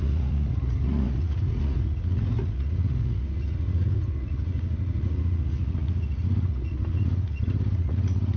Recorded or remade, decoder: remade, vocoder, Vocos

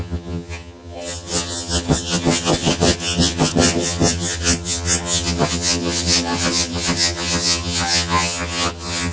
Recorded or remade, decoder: remade, vocoder, HiFi-GAN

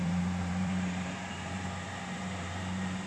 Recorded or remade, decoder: remade, vocoder, BigVGAN v2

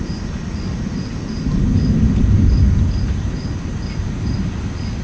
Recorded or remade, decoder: recorded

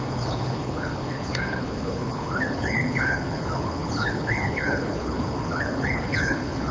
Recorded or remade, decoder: remade, codec, HILCodec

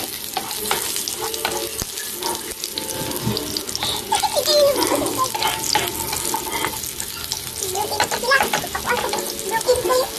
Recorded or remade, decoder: recorded